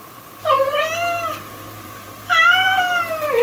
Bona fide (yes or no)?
no